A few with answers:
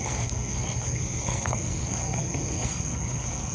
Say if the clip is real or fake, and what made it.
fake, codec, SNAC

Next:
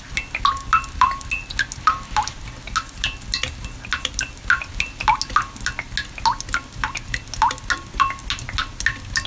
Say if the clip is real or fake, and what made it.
real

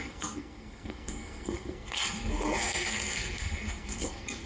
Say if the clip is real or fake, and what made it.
fake, codec, SNAC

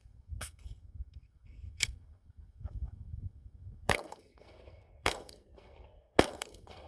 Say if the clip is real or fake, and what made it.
fake, codec, SNAC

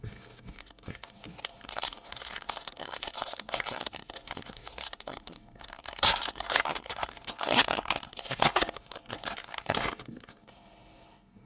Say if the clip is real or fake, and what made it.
fake, codec, SNAC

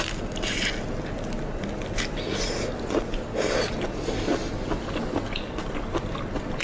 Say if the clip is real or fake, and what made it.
real